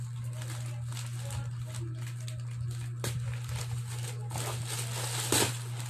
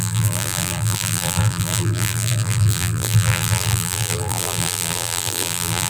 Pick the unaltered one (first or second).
first